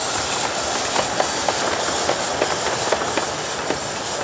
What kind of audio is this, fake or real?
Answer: real